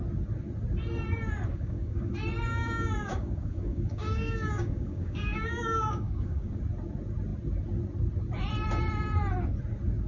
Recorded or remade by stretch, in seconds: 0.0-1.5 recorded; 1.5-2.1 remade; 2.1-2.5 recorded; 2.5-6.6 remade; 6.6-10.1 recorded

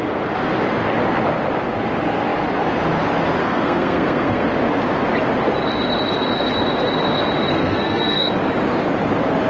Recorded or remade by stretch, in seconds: 0.0-3.4 recorded; 3.4-4.5 remade; 4.5-7.5 recorded; 7.5-8.3 remade; 8.3-9.5 recorded

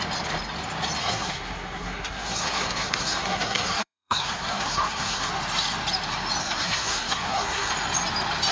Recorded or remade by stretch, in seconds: 0.0-1.0 recorded; 1.0-5.3 remade; 5.3-6.4 recorded; 6.4-7.7 remade; 7.7-8.5 recorded

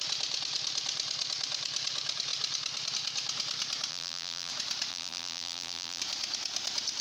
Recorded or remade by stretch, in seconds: 0.0-3.9 recorded; 3.9-4.5 remade; 4.5-4.9 recorded; 4.9-6.0 remade; 6.0-7.0 recorded

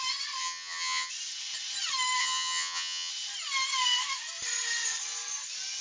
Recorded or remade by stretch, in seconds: 0.0-0.4 recorded; 0.4-1.1 remade; 1.1-2.2 recorded; 2.2-3.1 remade; 3.1-5.8 recorded

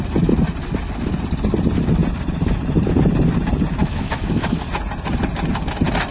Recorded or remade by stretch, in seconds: 0.0-3.8 recorded; 3.8-4.6 remade; 4.6-6.1 recorded